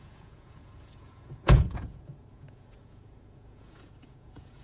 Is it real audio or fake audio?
fake